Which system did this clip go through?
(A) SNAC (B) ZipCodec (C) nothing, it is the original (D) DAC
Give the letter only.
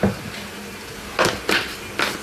C